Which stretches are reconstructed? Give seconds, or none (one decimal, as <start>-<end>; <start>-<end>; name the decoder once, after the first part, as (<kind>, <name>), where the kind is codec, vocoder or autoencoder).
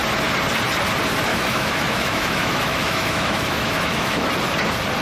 1.3-4.3 (autoencoder, DAC-VAE)